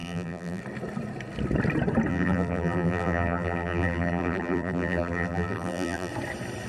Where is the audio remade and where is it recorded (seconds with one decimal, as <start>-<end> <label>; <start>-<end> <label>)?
0.0-0.6 remade; 0.6-2.1 recorded; 2.1-6.1 remade; 6.1-6.7 recorded